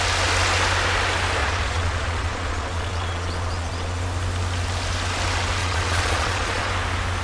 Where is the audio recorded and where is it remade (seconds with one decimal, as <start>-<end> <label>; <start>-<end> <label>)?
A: 0.0-1.4 recorded; 1.4-4.0 remade; 4.0-5.6 recorded; 5.6-6.7 remade; 6.7-7.2 recorded